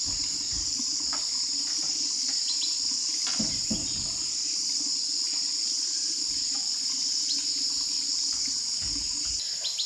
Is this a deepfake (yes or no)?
no